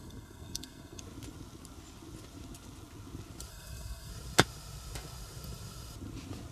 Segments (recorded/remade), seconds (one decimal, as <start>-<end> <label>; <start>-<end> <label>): 0.0-1.0 remade; 1.0-3.5 recorded; 3.5-4.1 remade; 4.1-6.5 recorded